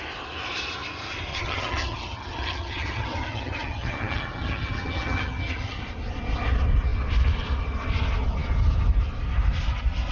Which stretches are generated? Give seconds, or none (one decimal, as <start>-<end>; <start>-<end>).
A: 1.3-5.8